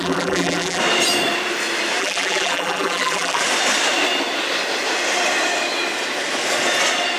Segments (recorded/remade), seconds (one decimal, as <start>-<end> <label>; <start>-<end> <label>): 0.0-0.8 remade; 0.8-2.0 recorded; 2.0-3.4 remade; 3.4-7.2 recorded